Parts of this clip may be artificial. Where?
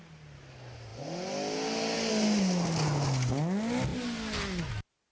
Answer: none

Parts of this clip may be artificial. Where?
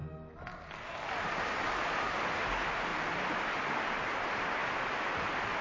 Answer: none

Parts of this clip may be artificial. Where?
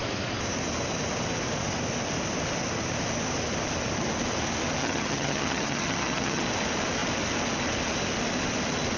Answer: 4.8-6.4 (vocoder, HiFi-GAN)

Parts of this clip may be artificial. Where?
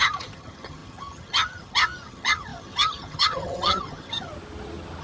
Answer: 0.0-4.3 (vocoder, HiFi-GAN)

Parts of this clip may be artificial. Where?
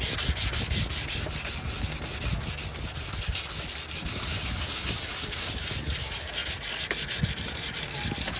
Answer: none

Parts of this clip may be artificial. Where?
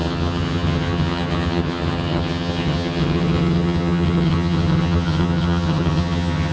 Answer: 0.0-6.5 (vocoder, HiFi-GAN)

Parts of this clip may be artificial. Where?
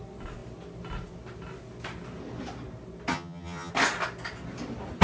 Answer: 3.1-3.7 (vocoder, HiFi-GAN)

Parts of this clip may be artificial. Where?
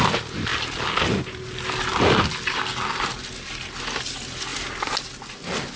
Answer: none